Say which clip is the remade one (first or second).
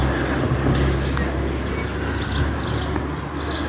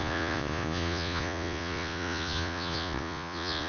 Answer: second